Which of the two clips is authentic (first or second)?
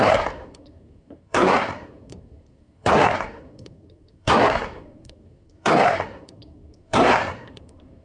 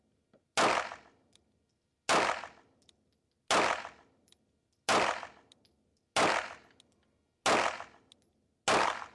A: second